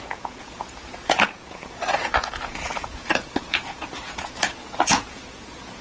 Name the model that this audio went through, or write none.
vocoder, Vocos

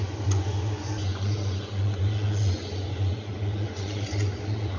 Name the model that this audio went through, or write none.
vocoder, Vocos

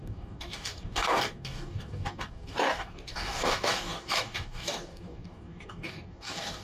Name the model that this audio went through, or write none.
codec, DAC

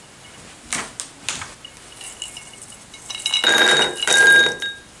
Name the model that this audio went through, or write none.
none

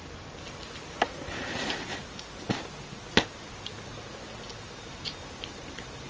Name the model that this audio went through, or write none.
none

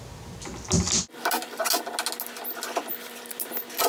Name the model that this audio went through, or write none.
none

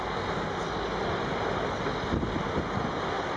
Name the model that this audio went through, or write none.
none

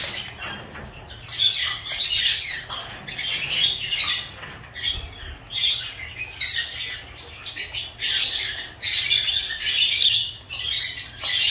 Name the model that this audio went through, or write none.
none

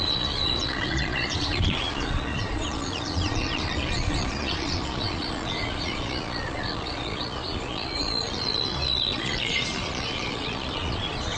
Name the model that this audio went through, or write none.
vocoder, Vocos